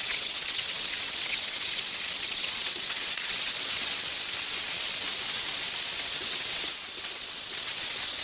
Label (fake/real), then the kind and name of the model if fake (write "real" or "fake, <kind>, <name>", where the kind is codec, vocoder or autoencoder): fake, vocoder, WaveNeXt